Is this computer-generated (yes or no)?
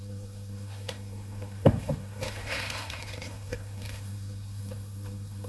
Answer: yes